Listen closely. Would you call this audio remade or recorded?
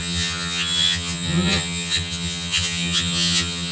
remade